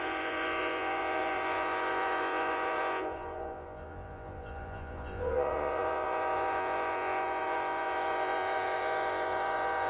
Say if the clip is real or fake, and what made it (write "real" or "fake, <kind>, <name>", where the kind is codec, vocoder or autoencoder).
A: fake, vocoder, Vocos